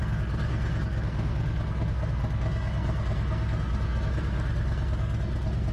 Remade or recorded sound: remade